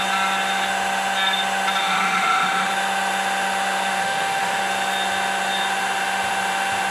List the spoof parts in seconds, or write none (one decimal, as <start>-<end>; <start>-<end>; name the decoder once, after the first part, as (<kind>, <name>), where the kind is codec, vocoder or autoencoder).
1.8-2.7 (autoencoder, DAC-VAE); 4.0-4.6